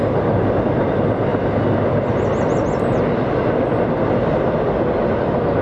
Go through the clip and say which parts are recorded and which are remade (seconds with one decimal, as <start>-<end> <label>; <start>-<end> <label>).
0.0-5.6 recorded